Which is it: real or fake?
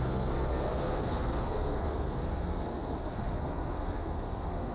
fake